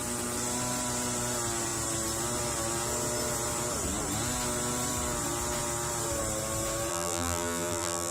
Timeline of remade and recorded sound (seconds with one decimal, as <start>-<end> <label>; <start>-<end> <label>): 0.0-6.9 recorded; 6.9-8.1 remade